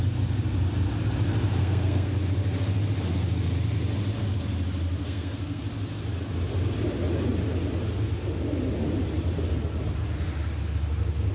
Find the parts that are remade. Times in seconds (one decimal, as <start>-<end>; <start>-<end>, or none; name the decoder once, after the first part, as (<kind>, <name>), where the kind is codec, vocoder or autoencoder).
1.6-2.1 (codec, SNAC); 5.0-5.6